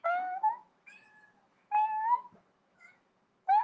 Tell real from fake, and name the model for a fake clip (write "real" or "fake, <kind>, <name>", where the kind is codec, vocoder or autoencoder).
fake, autoencoder, DAC-VAE